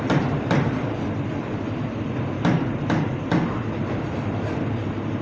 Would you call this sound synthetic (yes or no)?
yes